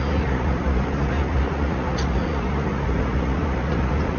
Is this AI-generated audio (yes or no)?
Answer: yes